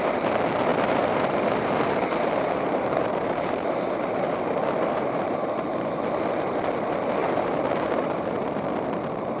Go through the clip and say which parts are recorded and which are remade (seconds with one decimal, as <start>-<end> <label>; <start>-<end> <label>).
0.0-0.7 recorded; 0.7-5.5 remade; 5.5-7.2 recorded; 7.2-8.3 remade; 8.3-9.4 recorded